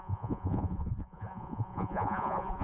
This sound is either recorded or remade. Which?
remade